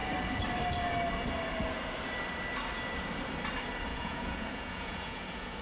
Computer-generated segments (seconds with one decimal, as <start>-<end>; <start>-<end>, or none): 3.9-5.6